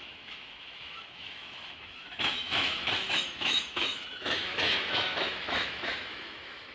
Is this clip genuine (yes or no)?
no